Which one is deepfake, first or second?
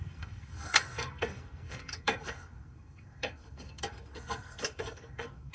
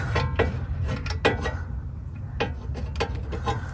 first